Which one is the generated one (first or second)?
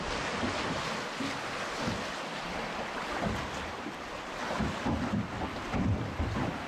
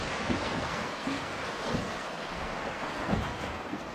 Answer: second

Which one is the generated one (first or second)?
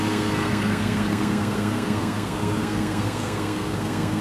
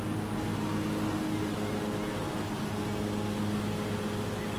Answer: first